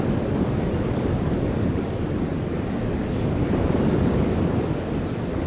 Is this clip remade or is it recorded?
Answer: remade